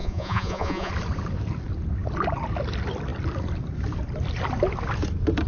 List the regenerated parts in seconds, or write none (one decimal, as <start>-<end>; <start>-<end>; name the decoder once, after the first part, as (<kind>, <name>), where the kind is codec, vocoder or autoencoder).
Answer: 0.0-0.9 (vocoder, Vocos)